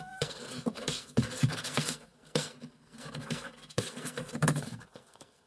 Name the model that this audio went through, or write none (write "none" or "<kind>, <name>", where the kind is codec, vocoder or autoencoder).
codec, SNAC